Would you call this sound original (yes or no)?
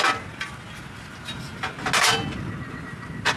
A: yes